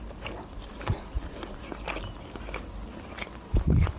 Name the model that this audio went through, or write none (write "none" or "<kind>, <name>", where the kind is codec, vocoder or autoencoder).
vocoder, BigVGAN v2